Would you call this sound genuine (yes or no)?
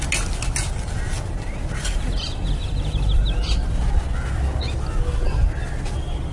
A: yes